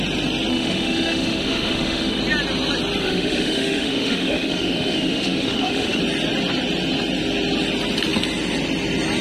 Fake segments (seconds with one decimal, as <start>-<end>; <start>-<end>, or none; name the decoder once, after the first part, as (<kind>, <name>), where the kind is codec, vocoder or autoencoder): 0.5-2.2 (autoencoder, DAC-VAE); 3.0-6.0